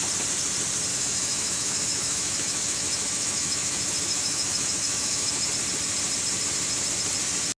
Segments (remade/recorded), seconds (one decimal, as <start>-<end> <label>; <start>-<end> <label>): 0.0-0.9 recorded; 0.9-5.5 remade; 5.5-7.6 recorded